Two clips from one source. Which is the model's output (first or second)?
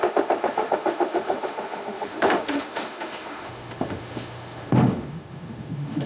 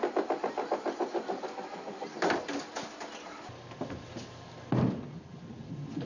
first